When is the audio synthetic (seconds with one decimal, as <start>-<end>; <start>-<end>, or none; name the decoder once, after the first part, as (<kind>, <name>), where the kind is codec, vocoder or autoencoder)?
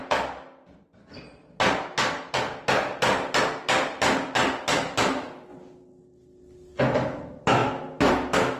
5.0-5.5 (autoencoder, DAC-VAE); 6.8-8.6